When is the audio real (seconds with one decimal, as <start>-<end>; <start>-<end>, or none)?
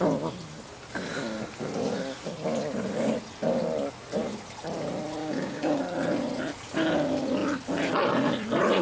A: 0.0-5.2; 5.8-8.8